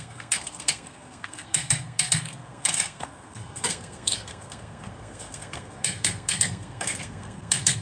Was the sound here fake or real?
fake